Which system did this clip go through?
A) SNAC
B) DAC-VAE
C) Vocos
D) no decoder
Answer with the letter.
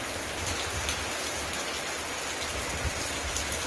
D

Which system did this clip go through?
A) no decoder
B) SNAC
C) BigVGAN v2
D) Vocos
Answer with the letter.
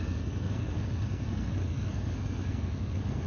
B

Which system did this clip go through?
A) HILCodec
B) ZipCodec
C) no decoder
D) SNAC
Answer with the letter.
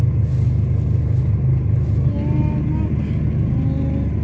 C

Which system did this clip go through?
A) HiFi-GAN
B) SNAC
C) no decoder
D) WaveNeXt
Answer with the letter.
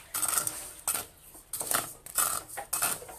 C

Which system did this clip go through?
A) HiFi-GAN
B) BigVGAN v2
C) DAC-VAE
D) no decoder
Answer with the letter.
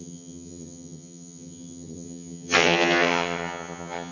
A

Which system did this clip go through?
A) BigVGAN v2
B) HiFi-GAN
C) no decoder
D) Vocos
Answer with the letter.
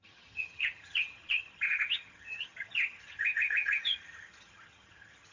B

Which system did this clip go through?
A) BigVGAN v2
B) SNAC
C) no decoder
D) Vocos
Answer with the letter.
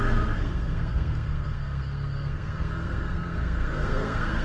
B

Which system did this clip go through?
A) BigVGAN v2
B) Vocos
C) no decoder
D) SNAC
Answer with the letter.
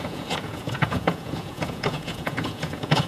B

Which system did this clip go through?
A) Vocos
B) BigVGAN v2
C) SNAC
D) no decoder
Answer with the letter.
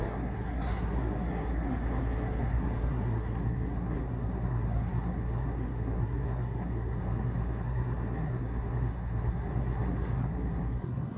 C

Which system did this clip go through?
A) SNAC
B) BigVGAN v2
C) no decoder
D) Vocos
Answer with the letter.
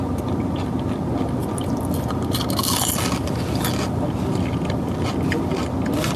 C